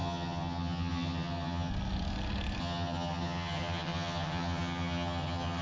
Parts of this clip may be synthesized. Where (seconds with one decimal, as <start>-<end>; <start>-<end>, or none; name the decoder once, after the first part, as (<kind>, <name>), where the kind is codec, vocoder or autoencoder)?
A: 0.0-1.7 (vocoder, HiFi-GAN); 2.6-5.6